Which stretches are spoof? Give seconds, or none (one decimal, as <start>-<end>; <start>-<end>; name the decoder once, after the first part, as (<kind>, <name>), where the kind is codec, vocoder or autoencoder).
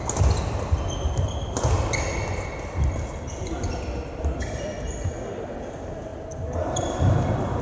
6.1-7.6 (vocoder, BigVGAN v2)